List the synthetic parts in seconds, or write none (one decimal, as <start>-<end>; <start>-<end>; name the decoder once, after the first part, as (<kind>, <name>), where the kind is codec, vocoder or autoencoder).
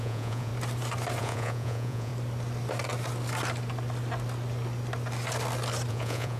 0.0-0.5 (vocoder, Vocos); 1.2-2.1; 5.9-6.4